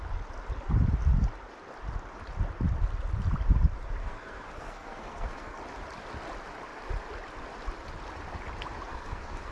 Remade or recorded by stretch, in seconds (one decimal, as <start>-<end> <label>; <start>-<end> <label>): 0.0-4.0 recorded; 4.0-5.6 remade; 5.6-8.9 recorded; 8.9-9.5 remade